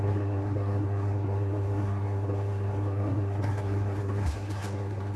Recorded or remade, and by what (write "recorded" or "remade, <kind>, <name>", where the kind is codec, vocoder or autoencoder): remade, codec, SNAC